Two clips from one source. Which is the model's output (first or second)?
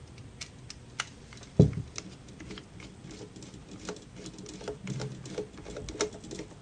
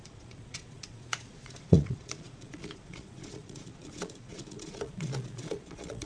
second